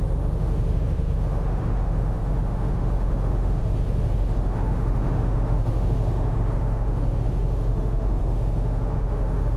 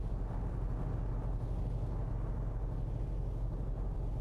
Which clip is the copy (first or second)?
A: first